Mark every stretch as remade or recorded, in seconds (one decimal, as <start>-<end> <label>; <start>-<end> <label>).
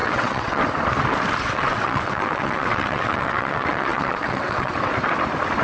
0.0-0.6 remade; 0.6-1.4 recorded; 1.4-4.7 remade; 4.7-5.6 recorded